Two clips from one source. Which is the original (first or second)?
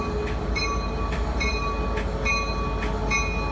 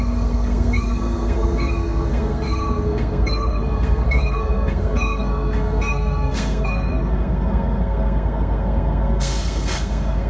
first